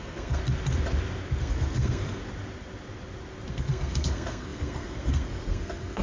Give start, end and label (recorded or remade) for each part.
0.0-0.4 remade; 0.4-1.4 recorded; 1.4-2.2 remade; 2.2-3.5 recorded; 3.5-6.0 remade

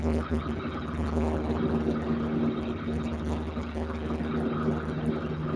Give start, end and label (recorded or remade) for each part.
0.0-5.6 recorded